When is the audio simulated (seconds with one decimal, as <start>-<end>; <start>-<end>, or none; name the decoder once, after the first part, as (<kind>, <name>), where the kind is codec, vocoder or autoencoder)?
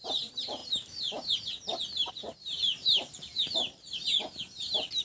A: 0.0-0.6 (vocoder, BigVGAN v2); 2.1-4.1